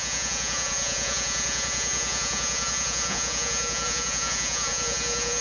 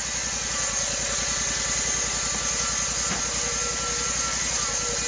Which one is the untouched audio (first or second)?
second